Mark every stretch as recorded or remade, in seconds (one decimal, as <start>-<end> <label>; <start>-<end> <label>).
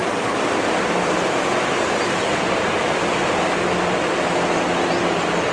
0.0-5.5 recorded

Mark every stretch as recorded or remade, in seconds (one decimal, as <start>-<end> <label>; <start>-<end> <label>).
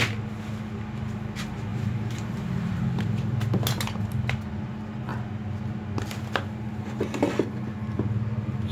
0.0-1.7 recorded; 1.7-2.8 remade; 2.8-8.7 recorded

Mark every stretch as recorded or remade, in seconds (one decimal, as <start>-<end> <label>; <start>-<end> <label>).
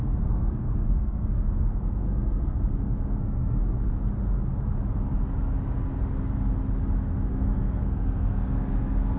0.0-3.6 remade; 3.6-7.3 recorded; 7.3-9.2 remade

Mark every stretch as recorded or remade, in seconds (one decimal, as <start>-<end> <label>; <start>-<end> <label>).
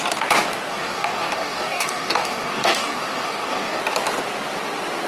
0.0-0.7 recorded; 0.7-3.8 remade; 3.8-5.1 recorded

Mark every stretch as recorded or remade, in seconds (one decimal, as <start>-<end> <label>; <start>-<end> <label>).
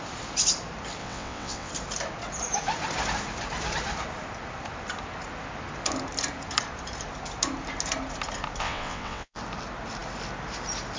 0.0-1.0 recorded; 1.0-1.7 remade; 1.7-8.6 recorded; 8.6-9.4 remade; 9.4-11.0 recorded